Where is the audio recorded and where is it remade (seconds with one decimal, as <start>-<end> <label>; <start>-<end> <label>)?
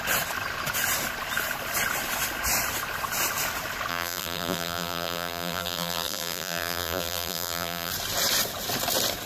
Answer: 0.0-3.9 recorded; 3.9-7.9 remade; 7.9-9.3 recorded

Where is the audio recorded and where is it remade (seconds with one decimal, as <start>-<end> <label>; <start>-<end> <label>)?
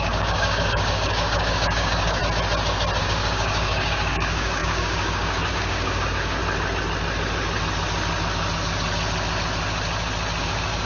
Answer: 0.0-2.2 remade; 2.2-3.0 recorded; 3.0-6.4 remade; 6.4-10.4 recorded; 10.4-10.9 remade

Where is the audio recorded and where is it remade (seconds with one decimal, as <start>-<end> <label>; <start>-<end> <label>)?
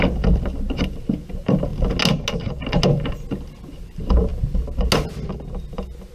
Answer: 0.0-6.1 recorded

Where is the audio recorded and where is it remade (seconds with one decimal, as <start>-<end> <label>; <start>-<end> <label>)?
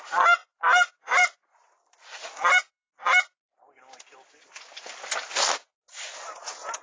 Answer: 0.0-0.4 recorded; 0.4-2.9 remade; 2.9-6.8 recorded